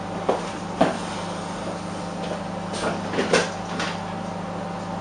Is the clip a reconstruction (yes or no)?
no